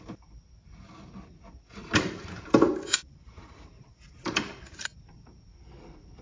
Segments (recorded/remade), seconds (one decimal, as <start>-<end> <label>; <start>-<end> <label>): 0.0-1.7 recorded; 1.7-5.4 remade; 5.4-6.2 recorded